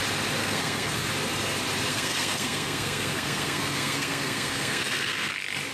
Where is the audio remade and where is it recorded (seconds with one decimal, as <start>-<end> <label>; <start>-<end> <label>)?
0.0-0.4 recorded; 0.4-1.1 remade; 1.1-1.9 recorded; 1.9-5.3 remade; 5.3-5.7 recorded